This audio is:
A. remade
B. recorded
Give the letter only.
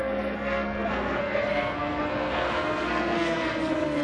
A